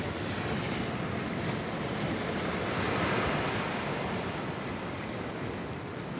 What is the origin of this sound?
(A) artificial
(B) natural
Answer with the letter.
B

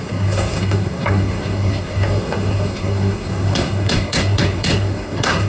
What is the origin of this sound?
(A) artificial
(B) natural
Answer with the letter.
A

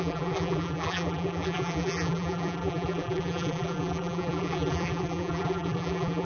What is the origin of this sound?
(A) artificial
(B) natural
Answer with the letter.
A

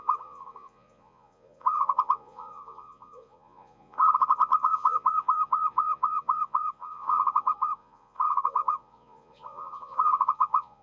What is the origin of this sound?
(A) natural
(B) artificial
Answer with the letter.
B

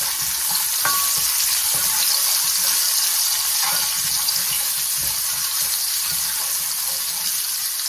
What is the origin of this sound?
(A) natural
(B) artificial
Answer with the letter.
A